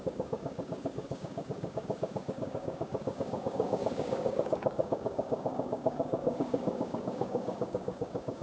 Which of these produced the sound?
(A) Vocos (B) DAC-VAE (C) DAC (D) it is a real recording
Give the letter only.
C